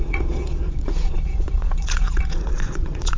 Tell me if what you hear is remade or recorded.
remade